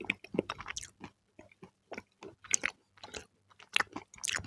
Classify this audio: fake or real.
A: real